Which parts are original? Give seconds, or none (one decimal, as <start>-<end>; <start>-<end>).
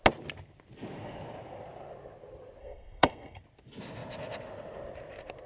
0.0-2.6; 3.4-5.5